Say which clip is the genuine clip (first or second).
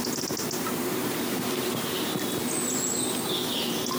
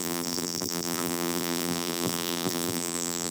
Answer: first